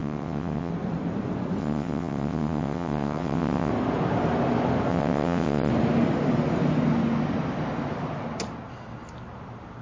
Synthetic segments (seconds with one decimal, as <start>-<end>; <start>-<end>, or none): 0.0-0.7; 1.6-3.7; 4.9-5.7